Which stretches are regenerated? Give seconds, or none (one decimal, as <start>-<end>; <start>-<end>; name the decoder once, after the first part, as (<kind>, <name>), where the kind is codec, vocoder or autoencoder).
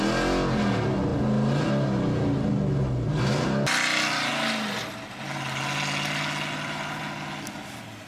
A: none